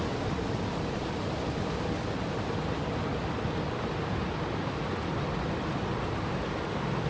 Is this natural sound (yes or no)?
yes